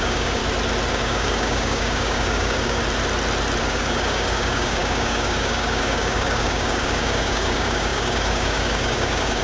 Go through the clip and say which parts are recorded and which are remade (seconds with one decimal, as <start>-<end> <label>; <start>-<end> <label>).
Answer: 0.0-0.4 remade; 0.4-0.9 recorded; 0.9-2.8 remade; 2.8-3.6 recorded; 3.6-9.4 remade